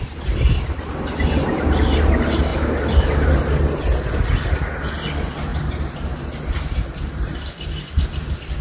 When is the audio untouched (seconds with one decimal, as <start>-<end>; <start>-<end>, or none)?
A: 0.0-2.5; 3.8-5.5; 8.0-8.6